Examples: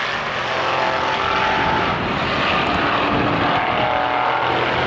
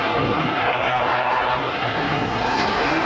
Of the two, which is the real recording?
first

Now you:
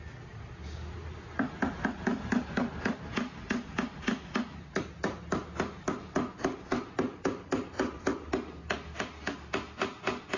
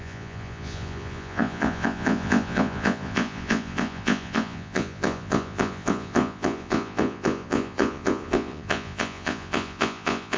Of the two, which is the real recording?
first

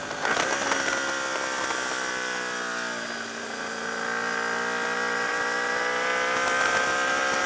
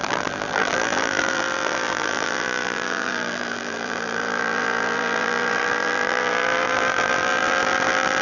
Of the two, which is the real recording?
first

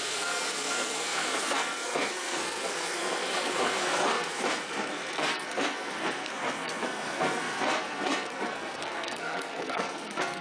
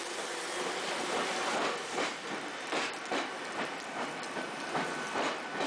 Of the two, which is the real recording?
second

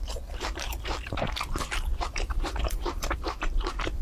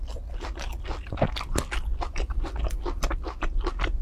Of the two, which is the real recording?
second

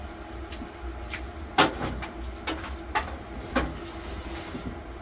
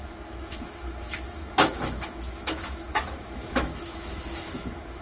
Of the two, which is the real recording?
first